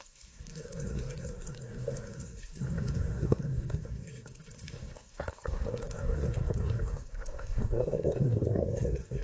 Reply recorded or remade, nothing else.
remade